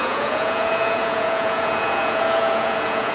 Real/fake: fake